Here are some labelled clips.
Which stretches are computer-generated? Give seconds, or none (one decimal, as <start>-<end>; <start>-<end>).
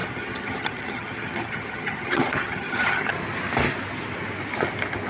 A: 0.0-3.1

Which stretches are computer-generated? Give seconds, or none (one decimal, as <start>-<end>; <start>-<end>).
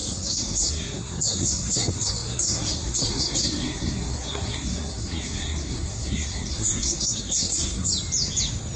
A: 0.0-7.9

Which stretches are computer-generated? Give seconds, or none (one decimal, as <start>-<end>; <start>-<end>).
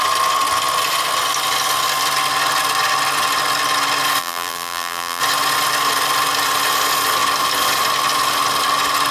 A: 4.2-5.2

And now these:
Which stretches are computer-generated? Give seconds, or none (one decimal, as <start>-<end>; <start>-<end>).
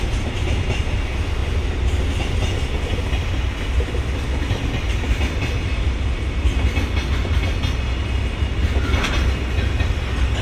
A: none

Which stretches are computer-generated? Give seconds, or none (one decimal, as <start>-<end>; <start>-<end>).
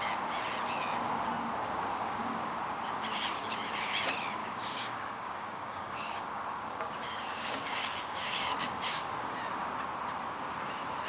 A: 1.6-2.6; 4.4-9.1